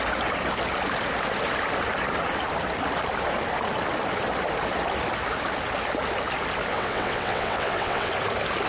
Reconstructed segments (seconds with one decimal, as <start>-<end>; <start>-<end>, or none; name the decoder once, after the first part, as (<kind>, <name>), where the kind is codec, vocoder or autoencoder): 6.7-8.1 (vocoder, WaveNeXt)